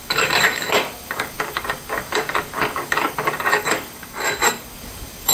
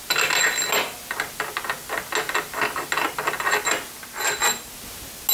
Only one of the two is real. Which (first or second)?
second